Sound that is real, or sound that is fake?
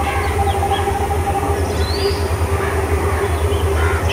real